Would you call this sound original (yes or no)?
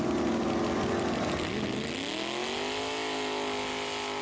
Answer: yes